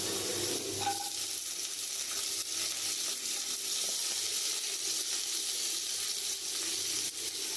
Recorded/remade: recorded